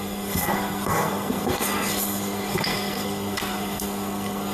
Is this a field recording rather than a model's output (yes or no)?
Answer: no